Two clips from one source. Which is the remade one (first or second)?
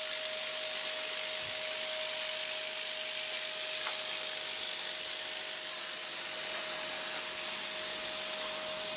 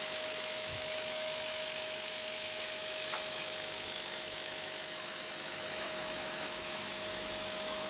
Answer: second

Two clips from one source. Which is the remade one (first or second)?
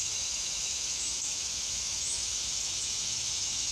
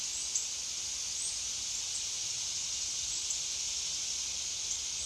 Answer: first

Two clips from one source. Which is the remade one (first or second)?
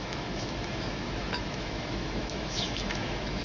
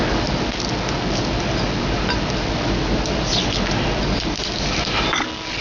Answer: first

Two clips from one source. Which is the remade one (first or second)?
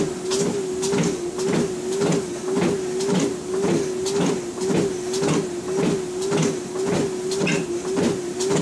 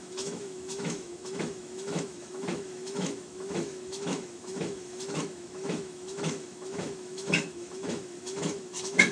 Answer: second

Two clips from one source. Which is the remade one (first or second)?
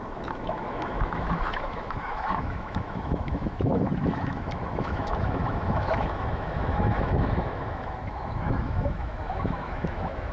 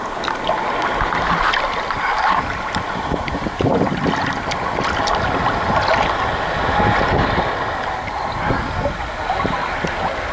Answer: first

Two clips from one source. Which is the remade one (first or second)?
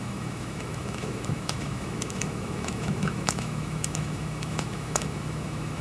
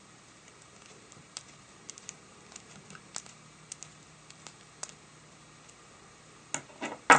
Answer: first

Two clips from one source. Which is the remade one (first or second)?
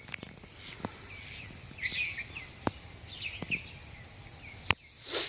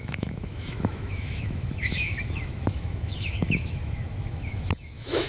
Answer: second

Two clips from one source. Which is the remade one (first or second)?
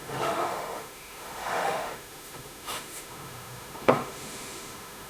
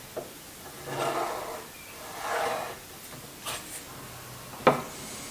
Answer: first